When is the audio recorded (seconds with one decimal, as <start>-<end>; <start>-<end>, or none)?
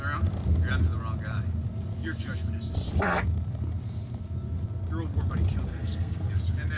0.0-5.7; 6.3-6.8